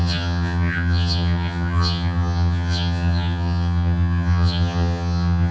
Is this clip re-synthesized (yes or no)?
yes